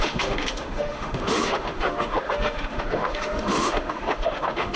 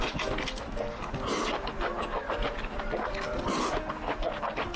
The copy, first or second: first